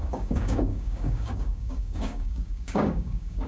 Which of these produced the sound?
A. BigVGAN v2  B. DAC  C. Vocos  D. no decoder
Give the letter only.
B